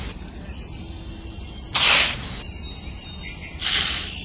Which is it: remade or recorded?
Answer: recorded